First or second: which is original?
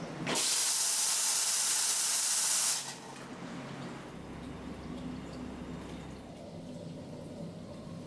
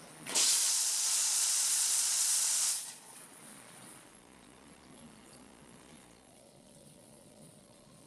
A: first